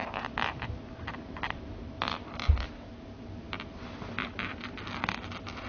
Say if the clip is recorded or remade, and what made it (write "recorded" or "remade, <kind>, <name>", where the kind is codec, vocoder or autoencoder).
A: recorded